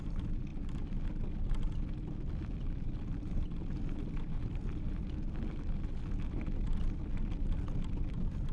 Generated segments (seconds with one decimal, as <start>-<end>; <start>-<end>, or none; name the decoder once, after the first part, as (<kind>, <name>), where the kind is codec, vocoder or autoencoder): none